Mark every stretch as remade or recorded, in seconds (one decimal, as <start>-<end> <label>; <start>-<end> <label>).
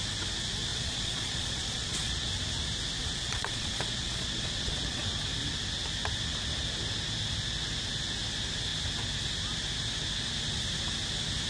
0.0-0.7 recorded; 0.7-2.3 remade; 2.3-3.0 recorded; 3.0-5.0 remade; 5.0-11.5 recorded